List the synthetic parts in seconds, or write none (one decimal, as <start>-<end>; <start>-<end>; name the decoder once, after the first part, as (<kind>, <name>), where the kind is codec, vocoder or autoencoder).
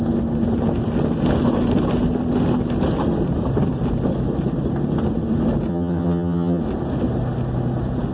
5.7-6.6 (vocoder, HiFi-GAN)